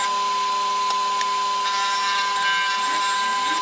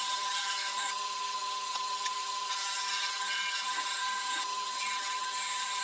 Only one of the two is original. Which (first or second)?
first